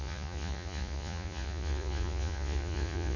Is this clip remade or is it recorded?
remade